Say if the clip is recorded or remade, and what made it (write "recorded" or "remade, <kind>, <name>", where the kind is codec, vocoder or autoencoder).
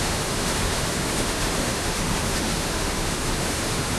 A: remade, autoencoder, DAC-VAE